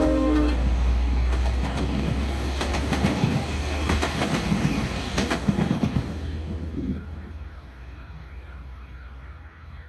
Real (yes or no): no